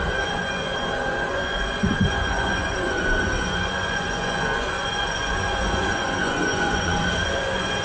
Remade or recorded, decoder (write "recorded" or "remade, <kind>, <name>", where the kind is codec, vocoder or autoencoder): remade, vocoder, Vocos